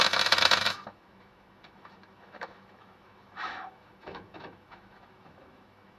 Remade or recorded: remade